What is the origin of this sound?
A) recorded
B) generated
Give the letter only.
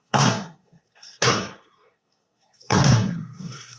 B